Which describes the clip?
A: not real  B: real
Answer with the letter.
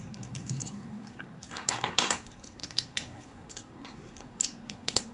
A